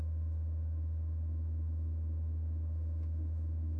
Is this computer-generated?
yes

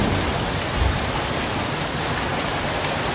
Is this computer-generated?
no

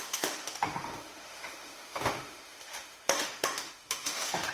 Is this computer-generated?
yes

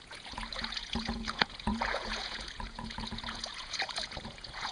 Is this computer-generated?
yes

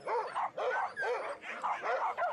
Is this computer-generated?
no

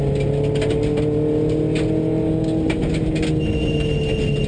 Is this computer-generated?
no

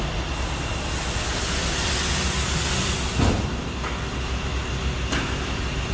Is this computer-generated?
no